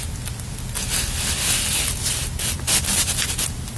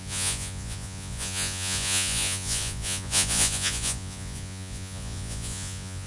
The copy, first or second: second